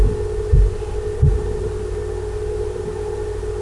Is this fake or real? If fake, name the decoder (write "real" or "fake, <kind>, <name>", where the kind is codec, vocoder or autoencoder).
real